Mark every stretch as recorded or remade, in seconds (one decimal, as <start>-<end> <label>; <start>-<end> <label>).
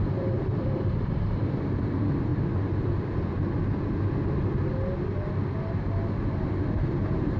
0.0-2.3 remade; 2.3-6.7 recorded; 6.7-7.4 remade